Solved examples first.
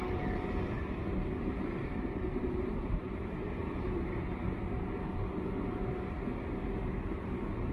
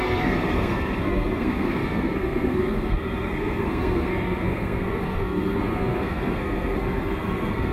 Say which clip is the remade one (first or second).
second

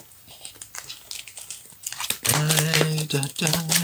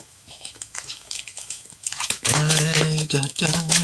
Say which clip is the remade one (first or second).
second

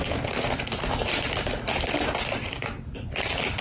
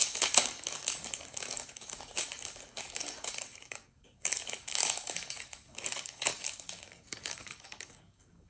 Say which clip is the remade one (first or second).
second